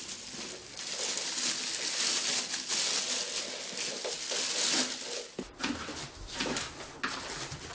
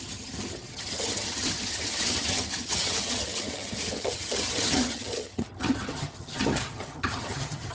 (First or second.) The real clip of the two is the first